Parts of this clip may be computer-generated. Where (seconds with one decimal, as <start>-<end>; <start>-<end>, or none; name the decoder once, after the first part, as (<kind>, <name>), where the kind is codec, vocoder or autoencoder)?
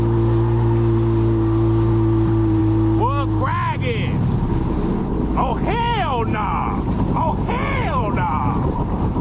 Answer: 6.3-9.2 (vocoder, BigVGAN v2)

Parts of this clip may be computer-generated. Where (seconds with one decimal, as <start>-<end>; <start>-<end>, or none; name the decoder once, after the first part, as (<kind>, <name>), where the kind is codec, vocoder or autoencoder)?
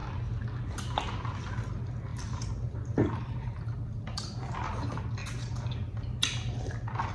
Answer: 2.1-4.7 (vocoder, BigVGAN v2); 5.2-5.7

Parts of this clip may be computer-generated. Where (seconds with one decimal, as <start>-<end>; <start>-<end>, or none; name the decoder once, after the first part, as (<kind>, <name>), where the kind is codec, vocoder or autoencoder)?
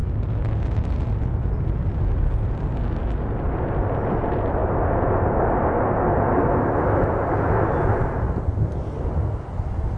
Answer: none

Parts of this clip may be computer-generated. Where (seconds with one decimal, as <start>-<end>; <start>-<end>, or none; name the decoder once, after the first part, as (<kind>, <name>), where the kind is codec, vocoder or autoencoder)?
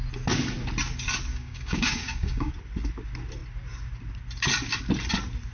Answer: 1.3-2.5 (codec, DAC)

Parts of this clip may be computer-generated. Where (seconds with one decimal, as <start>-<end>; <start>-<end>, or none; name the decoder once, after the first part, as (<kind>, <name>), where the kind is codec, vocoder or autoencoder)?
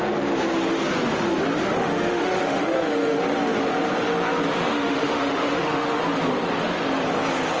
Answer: 1.8-3.2 (autoencoder, DAC-VAE); 4.7-6.0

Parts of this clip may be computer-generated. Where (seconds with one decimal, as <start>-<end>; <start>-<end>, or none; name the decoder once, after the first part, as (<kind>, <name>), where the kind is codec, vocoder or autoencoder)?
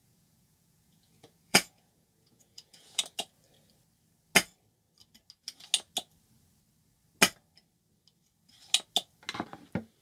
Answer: 0.0-3.0 (vocoder, Vocos)